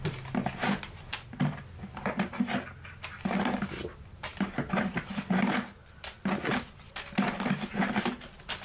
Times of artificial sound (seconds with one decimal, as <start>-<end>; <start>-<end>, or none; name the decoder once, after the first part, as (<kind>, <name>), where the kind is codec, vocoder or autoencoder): none